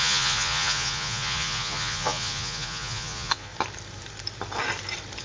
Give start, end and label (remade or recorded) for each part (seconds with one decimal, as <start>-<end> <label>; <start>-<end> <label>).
0.0-3.5 remade; 3.5-5.2 recorded